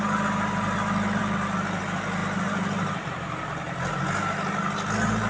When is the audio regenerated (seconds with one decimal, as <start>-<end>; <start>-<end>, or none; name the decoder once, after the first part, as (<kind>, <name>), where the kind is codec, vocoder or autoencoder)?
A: 2.2-4.0 (vocoder, BigVGAN v2)